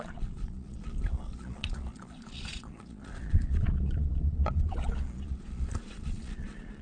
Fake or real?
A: fake